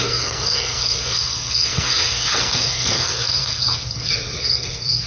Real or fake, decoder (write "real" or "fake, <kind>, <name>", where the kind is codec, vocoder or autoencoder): fake, codec, SNAC